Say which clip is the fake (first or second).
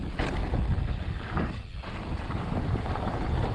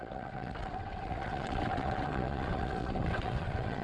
second